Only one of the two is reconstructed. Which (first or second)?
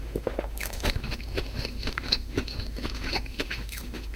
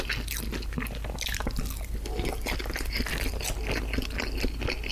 first